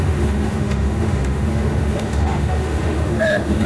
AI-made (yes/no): yes